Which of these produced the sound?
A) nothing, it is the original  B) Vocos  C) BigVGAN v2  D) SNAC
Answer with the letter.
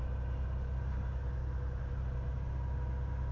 A